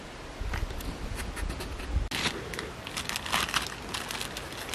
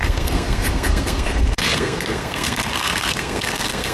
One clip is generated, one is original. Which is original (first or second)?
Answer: first